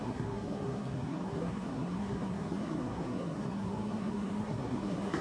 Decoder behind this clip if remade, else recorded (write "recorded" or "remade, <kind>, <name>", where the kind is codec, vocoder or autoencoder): remade, codec, SNAC